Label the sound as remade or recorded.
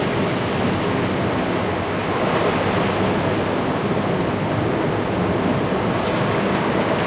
recorded